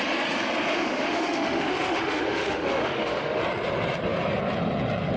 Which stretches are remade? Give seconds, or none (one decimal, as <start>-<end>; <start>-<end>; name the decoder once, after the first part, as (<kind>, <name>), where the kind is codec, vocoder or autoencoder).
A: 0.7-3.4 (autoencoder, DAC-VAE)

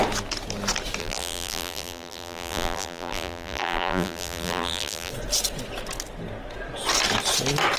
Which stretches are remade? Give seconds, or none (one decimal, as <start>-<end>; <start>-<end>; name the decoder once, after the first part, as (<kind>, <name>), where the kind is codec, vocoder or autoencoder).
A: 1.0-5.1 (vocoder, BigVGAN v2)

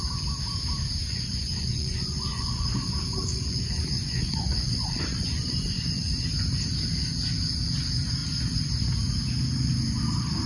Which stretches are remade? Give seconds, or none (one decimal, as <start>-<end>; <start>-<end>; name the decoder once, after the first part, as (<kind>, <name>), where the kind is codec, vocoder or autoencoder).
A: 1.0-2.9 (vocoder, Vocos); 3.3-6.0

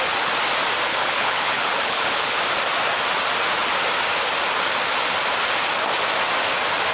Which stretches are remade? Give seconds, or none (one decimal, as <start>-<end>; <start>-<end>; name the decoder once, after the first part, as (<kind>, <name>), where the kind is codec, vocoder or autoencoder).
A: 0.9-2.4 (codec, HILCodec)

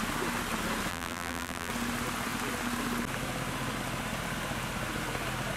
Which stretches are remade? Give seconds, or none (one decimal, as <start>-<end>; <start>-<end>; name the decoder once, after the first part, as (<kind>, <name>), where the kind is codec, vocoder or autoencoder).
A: 0.9-1.7 (vocoder, BigVGAN v2)